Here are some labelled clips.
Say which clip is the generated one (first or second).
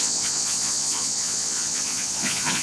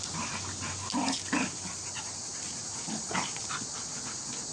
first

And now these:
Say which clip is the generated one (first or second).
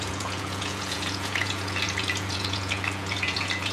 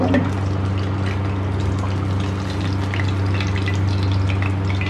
first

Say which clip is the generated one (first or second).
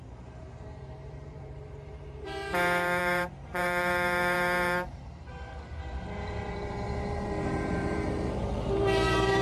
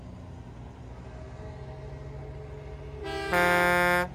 first